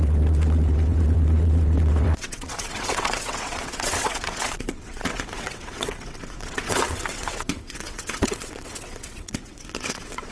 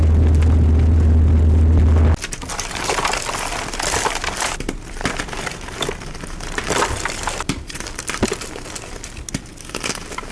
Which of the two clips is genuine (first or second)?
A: second